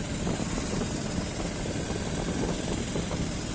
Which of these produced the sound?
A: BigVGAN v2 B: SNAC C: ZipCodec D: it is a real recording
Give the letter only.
D